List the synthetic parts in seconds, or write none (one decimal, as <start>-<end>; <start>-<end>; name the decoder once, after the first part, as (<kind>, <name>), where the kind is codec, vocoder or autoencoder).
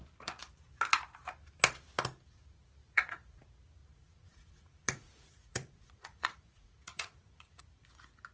2.8-3.4 (vocoder, Vocos); 3.8-7.6